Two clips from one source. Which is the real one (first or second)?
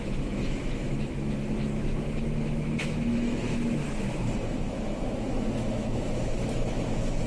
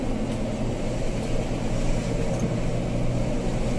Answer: second